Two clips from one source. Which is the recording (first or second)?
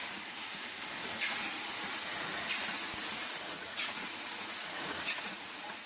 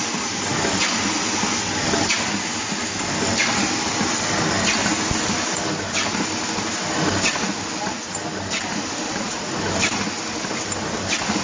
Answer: second